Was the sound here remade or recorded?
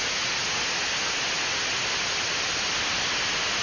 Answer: recorded